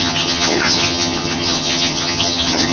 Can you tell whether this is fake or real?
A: fake